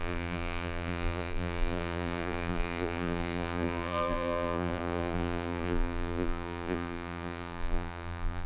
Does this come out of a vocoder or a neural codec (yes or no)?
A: yes